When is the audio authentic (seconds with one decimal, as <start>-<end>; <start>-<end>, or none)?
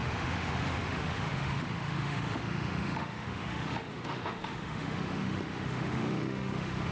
none